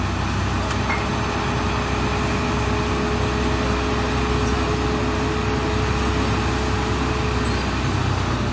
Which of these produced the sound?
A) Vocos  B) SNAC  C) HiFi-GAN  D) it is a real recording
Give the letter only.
D